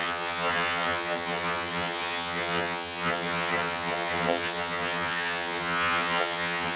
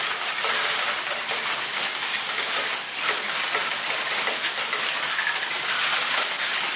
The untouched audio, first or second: second